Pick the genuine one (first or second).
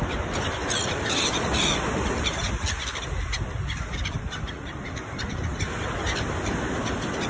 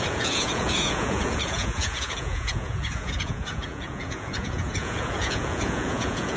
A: first